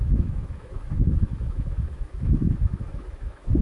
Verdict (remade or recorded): remade